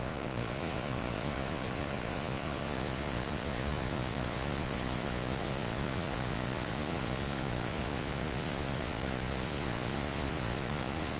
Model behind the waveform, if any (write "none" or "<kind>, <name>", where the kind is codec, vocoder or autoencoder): vocoder, Vocos